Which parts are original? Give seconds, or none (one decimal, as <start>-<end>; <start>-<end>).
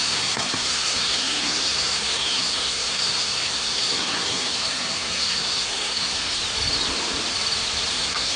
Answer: 6.4-7.9